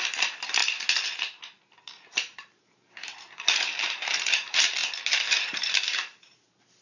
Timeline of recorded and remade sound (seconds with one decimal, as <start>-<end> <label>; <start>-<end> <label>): 0.0-0.6 remade; 0.6-1.8 recorded; 1.8-6.8 remade